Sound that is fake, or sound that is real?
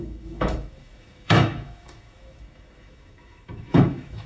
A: fake